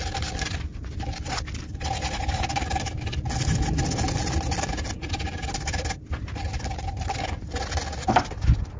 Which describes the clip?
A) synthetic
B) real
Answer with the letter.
B